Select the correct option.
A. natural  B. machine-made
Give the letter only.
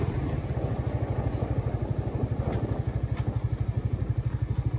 A